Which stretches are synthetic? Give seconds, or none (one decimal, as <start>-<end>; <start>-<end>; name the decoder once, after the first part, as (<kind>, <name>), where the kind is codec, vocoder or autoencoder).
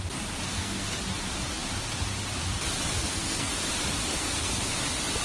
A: 0.5-1.0 (codec, SNAC); 3.0-3.5; 4.1-4.6